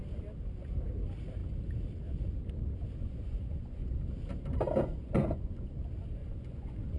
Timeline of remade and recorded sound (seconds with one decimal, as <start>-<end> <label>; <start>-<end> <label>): 0.0-3.0 recorded; 3.0-4.0 remade; 4.0-4.8 recorded; 4.8-5.7 remade; 5.7-6.2 recorded; 6.2-7.0 remade

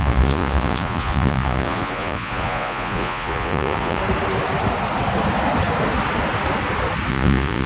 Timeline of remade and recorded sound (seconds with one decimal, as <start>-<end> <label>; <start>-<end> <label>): 0.0-4.0 remade; 4.0-7.1 recorded; 7.1-7.7 remade

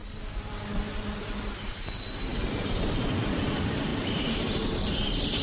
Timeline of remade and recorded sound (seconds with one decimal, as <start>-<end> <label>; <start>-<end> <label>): 0.0-5.4 recorded

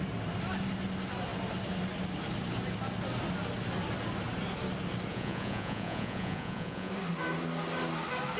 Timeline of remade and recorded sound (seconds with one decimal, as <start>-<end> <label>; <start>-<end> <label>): 0.0-5.1 recorded; 5.1-6.9 remade; 6.9-8.4 recorded

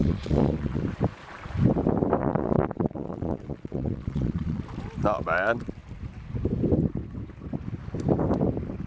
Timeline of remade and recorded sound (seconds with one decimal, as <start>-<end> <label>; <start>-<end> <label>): 0.0-0.8 remade; 0.8-2.2 recorded; 2.2-4.6 remade; 4.6-8.9 recorded

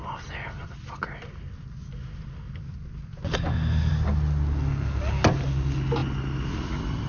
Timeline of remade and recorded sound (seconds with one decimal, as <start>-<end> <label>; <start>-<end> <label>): 0.0-7.1 recorded

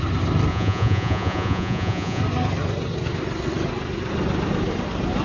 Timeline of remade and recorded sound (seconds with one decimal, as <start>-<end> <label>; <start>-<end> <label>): 0.0-0.5 recorded; 0.5-2.2 remade; 2.2-5.2 recorded

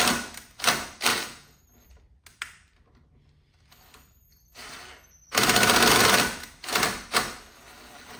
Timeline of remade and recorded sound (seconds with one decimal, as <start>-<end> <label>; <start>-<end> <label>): 0.0-1.1 recorded; 1.1-1.6 remade; 1.6-8.2 recorded